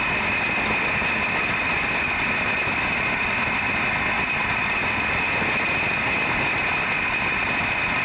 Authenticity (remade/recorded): recorded